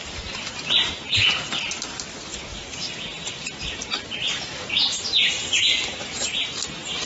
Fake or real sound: real